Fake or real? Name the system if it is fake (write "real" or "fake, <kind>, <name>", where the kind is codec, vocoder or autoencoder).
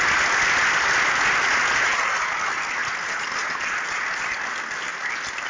real